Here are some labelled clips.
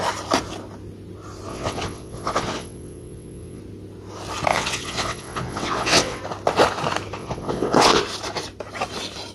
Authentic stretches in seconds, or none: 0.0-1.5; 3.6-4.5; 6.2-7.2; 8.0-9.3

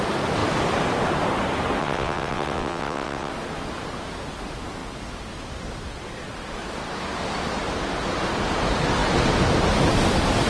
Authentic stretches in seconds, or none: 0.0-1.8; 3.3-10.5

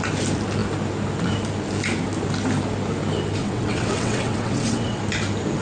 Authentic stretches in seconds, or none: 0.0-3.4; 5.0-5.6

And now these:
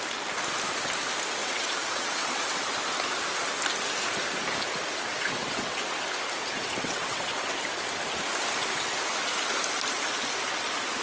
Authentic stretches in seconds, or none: 0.0-1.4; 2.7-5.1; 5.9-6.6; 7.5-11.0